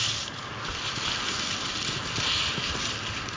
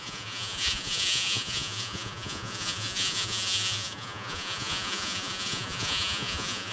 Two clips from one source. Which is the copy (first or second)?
second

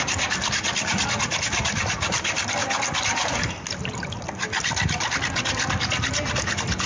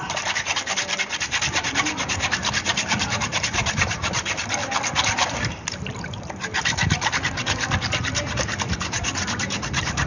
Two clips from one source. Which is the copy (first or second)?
second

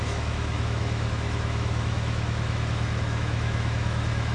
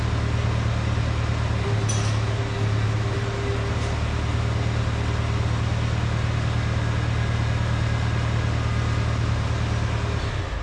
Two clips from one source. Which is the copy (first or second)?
first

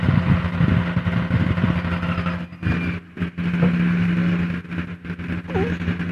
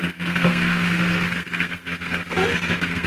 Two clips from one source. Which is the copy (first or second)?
second